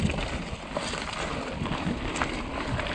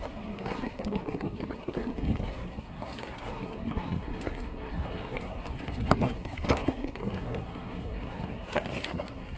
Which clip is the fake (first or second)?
second